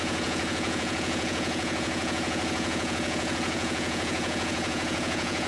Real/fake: fake